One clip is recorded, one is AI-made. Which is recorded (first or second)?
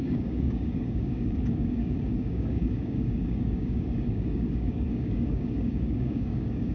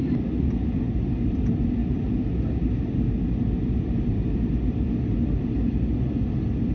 second